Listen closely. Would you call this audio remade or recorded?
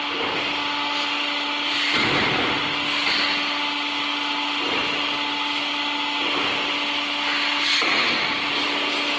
recorded